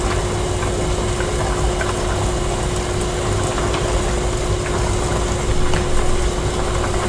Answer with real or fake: real